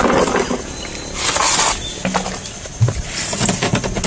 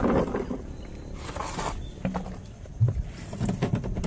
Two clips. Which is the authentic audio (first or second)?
first